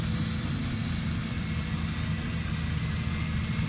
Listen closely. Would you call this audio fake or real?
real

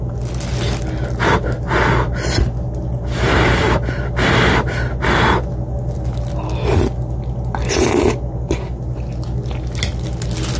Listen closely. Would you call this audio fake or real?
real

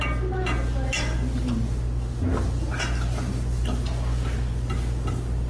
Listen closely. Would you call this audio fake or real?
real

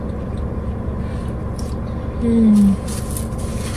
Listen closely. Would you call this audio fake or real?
real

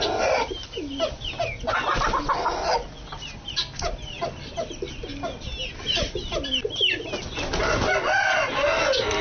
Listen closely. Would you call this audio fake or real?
real